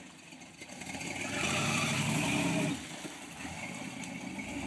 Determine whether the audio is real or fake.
real